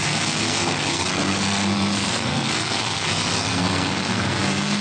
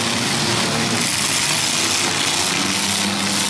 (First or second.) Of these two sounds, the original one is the second